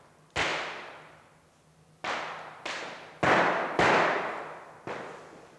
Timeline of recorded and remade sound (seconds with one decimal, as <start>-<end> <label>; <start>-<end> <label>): 0.0-5.6 recorded